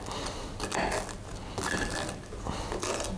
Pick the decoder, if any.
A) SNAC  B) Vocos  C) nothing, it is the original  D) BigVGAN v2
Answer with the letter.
C